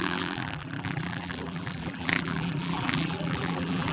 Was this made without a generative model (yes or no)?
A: no